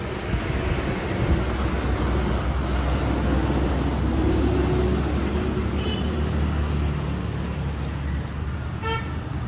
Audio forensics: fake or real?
real